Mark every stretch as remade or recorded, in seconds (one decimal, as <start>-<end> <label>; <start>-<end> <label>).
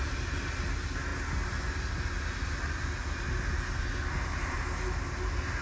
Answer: 0.0-5.6 recorded